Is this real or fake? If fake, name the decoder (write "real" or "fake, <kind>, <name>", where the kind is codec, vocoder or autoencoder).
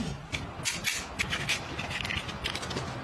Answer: real